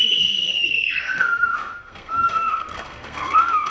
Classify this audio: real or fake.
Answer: fake